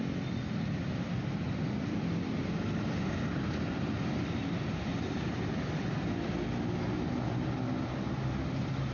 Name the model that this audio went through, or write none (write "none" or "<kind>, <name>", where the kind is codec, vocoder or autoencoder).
none